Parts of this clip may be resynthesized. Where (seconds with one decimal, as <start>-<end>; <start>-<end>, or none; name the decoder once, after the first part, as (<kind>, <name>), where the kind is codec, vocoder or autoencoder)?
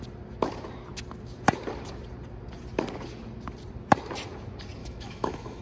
4.8-5.6 (autoencoder, DAC-VAE)